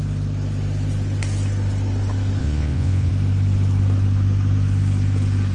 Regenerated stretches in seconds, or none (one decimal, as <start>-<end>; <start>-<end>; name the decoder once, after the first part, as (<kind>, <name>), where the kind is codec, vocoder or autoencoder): 2.4-3.1 (vocoder, Vocos)